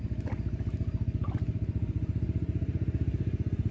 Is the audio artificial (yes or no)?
no